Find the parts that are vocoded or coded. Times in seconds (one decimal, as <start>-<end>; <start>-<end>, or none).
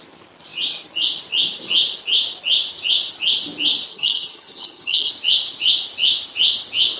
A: 3.9-5.1